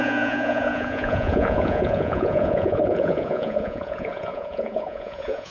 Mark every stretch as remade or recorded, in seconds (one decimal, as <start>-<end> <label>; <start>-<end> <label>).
0.0-5.5 remade